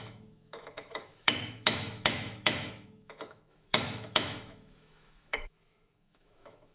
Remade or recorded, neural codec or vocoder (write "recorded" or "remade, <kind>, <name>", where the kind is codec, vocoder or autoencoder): remade, autoencoder, DAC-VAE